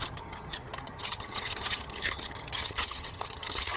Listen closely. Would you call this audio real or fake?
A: fake